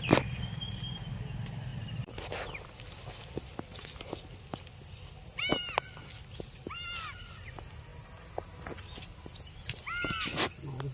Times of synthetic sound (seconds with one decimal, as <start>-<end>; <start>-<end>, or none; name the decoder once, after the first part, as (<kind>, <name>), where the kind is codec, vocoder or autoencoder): none